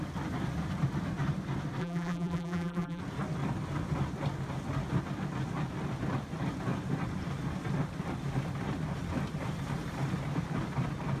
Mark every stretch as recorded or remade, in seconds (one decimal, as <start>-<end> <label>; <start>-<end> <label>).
0.0-1.8 recorded; 1.8-3.0 remade; 3.0-11.2 recorded